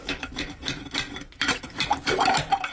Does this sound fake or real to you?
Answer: fake